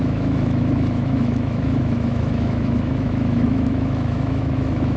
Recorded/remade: remade